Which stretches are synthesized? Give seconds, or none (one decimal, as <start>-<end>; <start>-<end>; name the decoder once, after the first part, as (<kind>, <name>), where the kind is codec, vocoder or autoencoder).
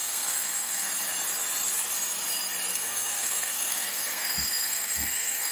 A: 0.0-0.9 (codec, SNAC); 2.7-5.5